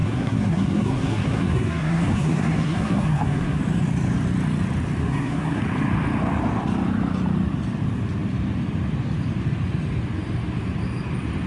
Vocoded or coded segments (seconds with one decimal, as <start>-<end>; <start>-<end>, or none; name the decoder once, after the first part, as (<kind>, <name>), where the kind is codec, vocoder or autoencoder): 0.0-3.6 (codec, SNAC); 5.0-5.6